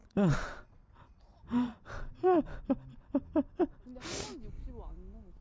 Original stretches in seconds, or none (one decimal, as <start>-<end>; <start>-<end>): 2.6-5.4